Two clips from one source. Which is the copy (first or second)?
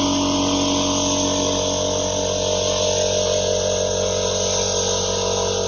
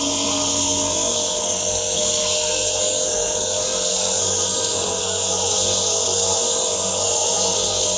second